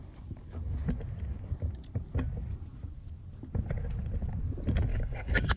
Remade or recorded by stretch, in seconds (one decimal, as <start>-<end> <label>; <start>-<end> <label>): 0.0-4.9 recorded; 4.9-5.6 remade